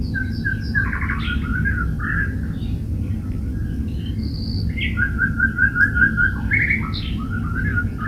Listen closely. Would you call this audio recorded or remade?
recorded